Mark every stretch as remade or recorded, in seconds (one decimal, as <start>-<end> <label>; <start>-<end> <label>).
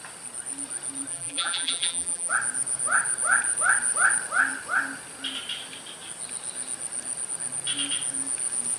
0.0-1.1 recorded; 1.1-2.3 remade; 2.3-8.8 recorded